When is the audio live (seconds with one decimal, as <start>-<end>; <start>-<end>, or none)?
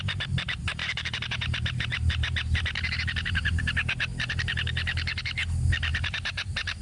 0.0-0.8; 3.6-5.9